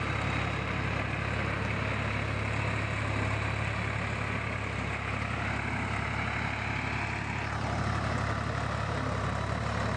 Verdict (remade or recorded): recorded